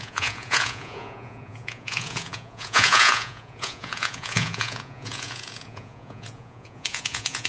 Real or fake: fake